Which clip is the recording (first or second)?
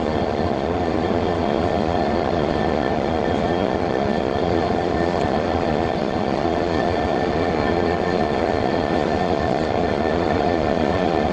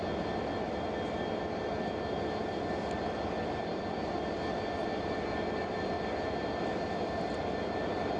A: second